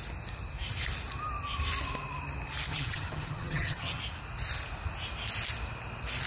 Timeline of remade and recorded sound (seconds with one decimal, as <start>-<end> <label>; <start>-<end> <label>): 0.0-2.7 recorded; 2.7-4.0 remade; 4.0-6.3 recorded